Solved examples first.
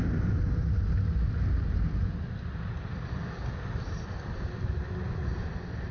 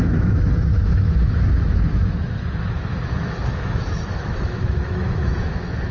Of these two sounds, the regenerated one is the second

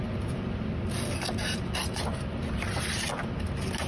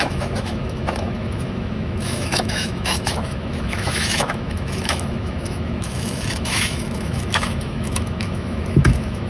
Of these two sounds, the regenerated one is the second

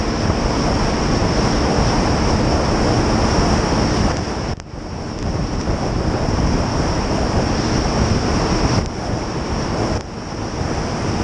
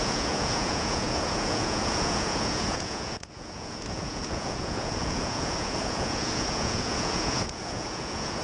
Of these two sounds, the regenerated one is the second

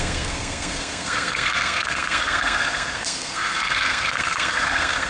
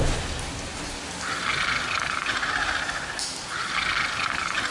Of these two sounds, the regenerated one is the first